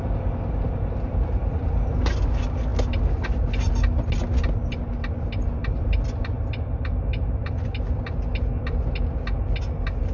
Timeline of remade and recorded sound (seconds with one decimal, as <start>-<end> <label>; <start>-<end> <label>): 0.0-10.1 recorded